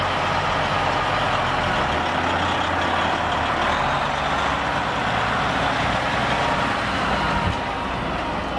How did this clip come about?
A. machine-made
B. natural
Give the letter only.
B